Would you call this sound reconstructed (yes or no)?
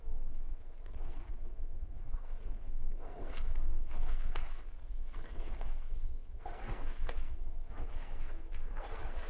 yes